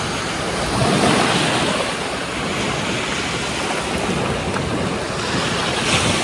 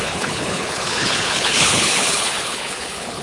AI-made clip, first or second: second